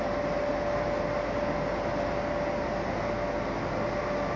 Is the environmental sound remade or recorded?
recorded